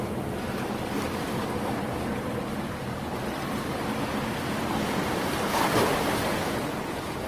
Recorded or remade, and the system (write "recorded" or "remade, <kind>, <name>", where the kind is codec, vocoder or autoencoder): recorded